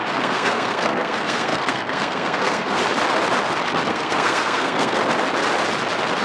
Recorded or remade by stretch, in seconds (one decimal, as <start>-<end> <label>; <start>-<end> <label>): 0.0-2.8 remade; 2.8-3.9 recorded; 3.9-5.0 remade; 5.0-6.2 recorded